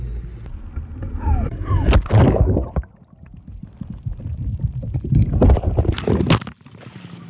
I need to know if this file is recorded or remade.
recorded